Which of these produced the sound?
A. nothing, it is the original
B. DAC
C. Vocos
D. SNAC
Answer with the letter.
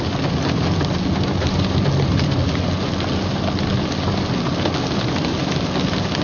A